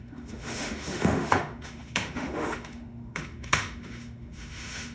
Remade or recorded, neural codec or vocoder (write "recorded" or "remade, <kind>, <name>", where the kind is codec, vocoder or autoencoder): remade, autoencoder, DAC-VAE